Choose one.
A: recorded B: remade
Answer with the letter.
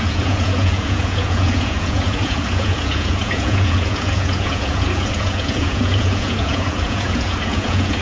B